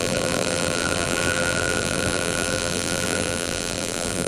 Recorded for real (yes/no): no